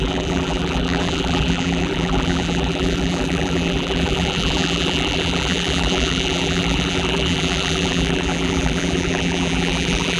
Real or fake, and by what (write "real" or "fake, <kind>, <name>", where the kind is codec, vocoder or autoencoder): fake, vocoder, BigVGAN v2